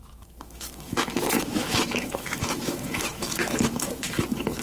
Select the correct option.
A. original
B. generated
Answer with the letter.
B